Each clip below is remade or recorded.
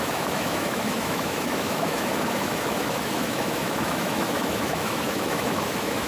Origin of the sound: remade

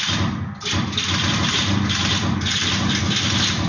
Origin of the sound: recorded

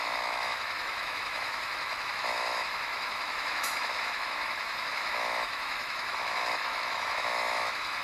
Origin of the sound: remade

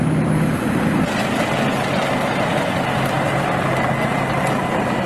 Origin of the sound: recorded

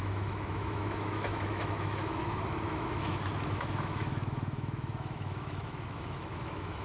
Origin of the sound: remade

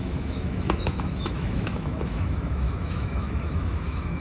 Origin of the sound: remade